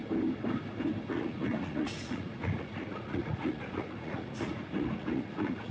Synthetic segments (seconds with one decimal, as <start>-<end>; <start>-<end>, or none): 1.1-5.7